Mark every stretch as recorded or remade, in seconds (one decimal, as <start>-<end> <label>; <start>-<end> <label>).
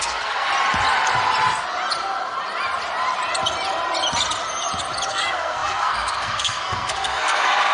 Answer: 0.0-0.5 remade; 0.5-5.1 recorded; 5.1-7.7 remade